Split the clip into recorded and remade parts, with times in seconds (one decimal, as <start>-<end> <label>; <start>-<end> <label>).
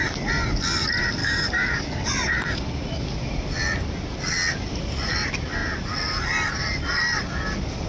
0.0-1.2 recorded; 1.2-2.1 remade; 2.1-7.9 recorded